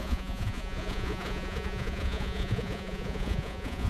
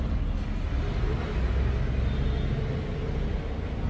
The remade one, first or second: first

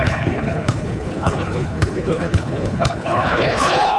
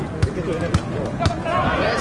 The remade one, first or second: first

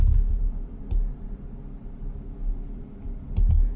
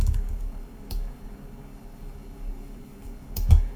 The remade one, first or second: second